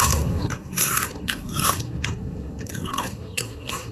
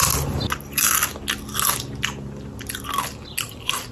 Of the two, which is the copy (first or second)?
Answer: first